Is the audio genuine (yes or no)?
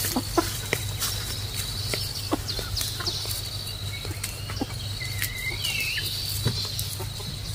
yes